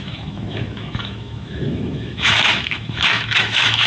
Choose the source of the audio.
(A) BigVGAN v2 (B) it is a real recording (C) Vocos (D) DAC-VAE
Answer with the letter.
D